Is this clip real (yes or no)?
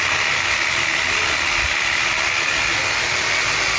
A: yes